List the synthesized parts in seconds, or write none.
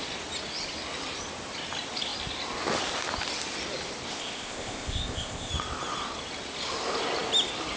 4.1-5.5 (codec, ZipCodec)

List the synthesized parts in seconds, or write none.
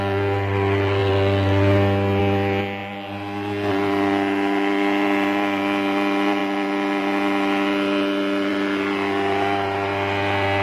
none